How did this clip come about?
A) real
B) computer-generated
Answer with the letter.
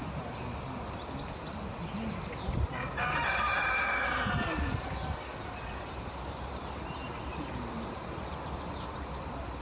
A